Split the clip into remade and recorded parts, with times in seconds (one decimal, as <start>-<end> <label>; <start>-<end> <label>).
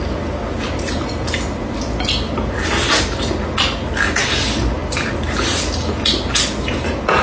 0.0-7.2 recorded